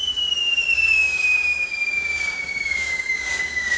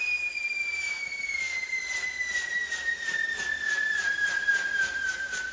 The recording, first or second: second